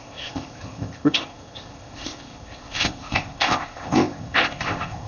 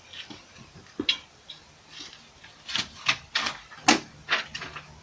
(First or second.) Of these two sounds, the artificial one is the first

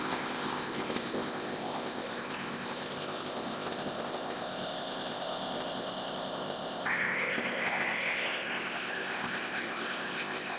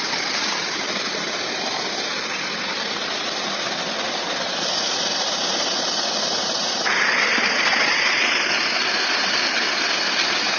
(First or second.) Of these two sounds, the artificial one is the first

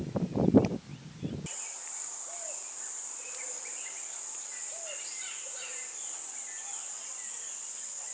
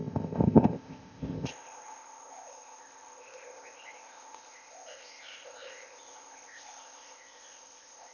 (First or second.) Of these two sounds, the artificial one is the second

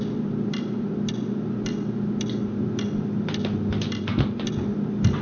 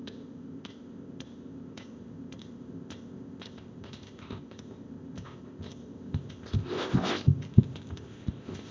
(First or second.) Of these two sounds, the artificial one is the second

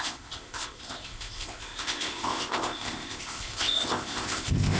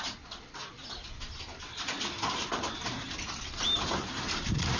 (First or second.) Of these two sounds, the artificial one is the first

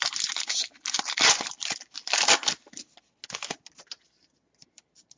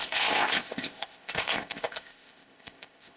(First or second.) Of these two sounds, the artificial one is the second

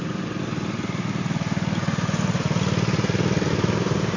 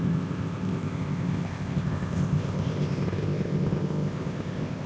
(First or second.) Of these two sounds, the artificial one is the second